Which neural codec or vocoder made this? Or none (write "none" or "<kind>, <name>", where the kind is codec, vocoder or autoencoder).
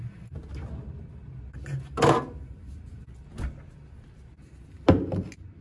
none